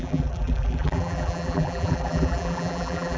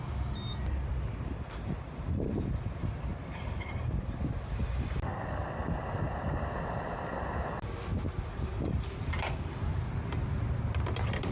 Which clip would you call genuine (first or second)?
second